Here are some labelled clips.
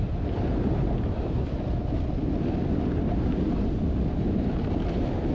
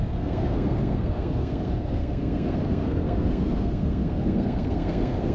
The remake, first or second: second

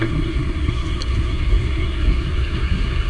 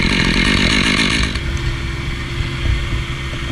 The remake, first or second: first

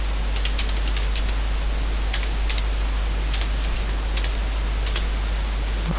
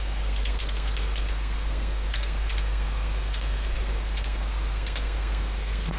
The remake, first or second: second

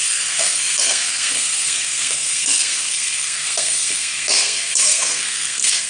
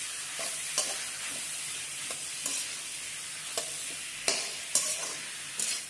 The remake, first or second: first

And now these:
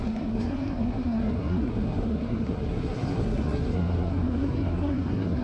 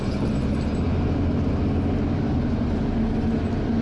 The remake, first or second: first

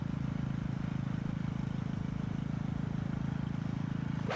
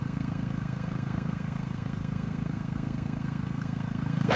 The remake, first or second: second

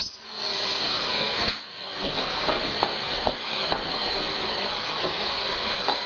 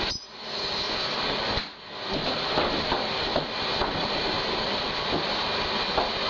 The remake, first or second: first